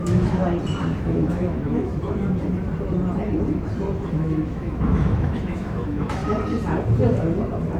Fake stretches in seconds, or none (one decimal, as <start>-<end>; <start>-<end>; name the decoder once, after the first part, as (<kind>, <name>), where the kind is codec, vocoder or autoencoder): 0.0-0.4 (autoencoder, DAC-VAE); 1.0-1.9; 4.1-6.2